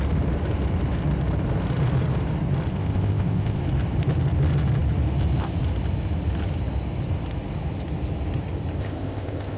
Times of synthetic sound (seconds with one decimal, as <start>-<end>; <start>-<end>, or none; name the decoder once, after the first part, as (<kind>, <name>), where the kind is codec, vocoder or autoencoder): 2.7-3.6 (codec, ZipCodec); 8.8-9.6